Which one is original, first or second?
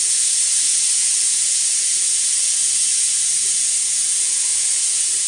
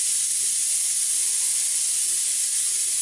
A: second